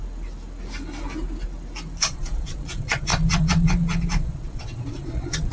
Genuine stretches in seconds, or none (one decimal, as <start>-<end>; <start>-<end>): 0.0-2.0